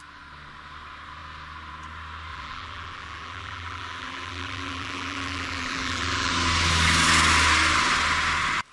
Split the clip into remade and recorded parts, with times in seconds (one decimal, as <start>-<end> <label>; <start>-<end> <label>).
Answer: 0.0-2.3 recorded; 2.3-6.3 remade; 6.3-8.7 recorded